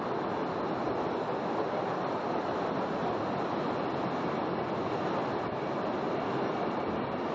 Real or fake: real